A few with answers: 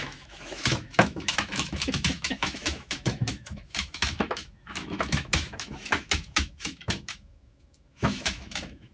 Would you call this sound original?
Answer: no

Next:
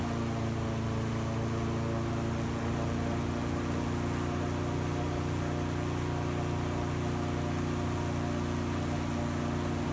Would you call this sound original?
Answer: yes